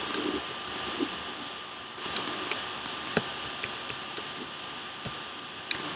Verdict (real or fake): real